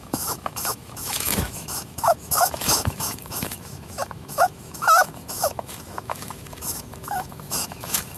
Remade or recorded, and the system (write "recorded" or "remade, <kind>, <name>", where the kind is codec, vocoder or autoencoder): remade, autoencoder, DAC-VAE